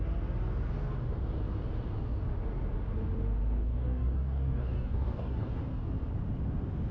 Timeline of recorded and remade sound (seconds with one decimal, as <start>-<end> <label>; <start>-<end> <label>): 0.0-3.6 recorded; 3.6-5.9 remade; 5.9-6.9 recorded